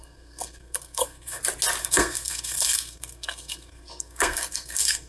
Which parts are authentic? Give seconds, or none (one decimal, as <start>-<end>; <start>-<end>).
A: 1.4-1.8